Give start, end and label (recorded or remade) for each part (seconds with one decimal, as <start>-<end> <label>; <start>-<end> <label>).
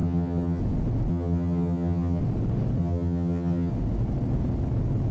0.0-0.6 remade; 0.6-1.1 recorded; 1.1-2.2 remade; 2.2-2.8 recorded; 2.8-3.7 remade; 3.7-5.1 recorded